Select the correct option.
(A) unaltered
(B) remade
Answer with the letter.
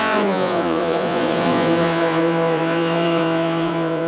B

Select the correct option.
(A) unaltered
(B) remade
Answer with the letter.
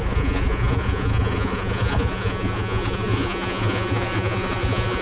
B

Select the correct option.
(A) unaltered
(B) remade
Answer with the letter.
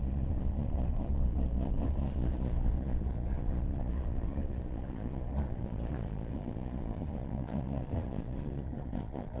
B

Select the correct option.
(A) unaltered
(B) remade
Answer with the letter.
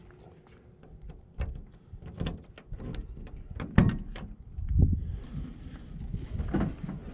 A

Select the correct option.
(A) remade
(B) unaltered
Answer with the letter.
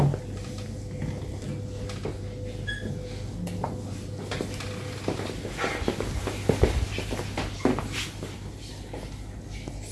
B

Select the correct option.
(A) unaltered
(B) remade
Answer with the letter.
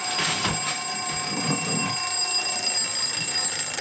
A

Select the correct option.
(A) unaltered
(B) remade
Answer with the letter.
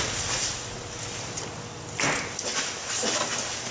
A